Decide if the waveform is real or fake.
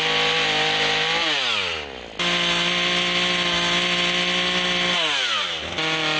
real